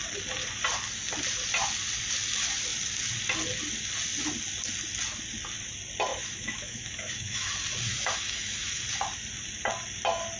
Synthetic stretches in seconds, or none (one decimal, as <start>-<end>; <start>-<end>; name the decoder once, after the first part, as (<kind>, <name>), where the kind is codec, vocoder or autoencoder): 6.1-7.5 (autoencoder, DAC-VAE); 7.9-8.8